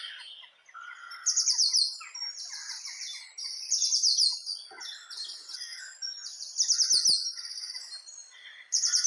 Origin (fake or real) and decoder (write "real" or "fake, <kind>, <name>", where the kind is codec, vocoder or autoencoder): real